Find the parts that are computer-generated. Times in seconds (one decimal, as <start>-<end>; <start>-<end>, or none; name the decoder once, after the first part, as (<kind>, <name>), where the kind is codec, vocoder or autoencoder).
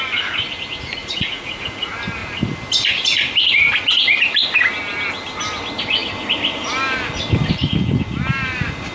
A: 1.0-1.7 (vocoder, Vocos)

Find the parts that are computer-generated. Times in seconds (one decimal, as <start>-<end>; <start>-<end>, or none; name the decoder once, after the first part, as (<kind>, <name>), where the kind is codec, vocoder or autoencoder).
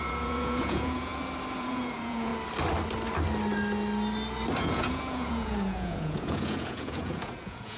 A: 0.0-1.1 (vocoder, Vocos); 1.6-2.3; 4.6-7.8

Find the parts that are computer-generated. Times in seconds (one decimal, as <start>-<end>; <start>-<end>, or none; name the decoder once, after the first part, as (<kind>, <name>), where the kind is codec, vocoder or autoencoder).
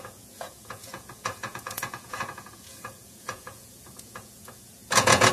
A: 0.0-5.3 (vocoder, Vocos)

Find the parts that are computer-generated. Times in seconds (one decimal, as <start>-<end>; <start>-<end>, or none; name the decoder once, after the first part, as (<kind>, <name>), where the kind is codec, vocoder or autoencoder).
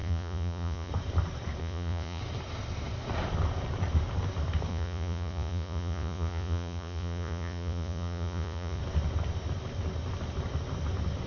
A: 0.0-0.9 (vocoder, Vocos); 1.6-2.2; 4.7-8.8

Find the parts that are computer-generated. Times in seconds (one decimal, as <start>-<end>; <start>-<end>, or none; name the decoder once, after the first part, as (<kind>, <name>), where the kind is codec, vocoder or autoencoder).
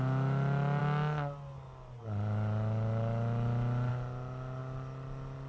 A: none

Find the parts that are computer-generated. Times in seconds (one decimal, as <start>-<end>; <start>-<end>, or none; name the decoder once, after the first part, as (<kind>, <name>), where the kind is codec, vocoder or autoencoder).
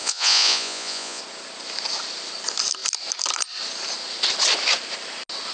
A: 0.0-1.2 (vocoder, Vocos)